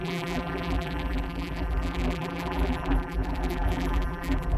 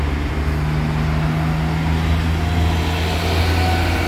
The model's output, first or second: first